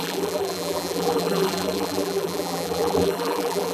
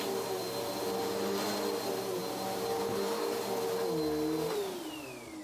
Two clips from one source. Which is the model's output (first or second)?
first